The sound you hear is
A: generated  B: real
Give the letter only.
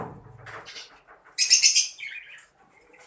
B